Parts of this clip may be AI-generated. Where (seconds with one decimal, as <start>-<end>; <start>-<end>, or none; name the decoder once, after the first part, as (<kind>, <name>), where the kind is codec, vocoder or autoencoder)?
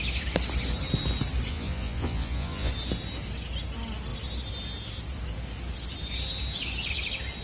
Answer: 1.5-2.7 (vocoder, Vocos)